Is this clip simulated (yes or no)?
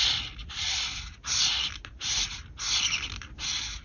no